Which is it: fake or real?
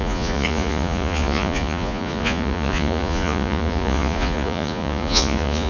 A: fake